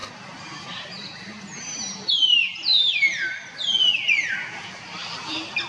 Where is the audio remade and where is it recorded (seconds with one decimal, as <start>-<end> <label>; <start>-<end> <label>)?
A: 0.0-2.9 remade; 2.9-5.7 recorded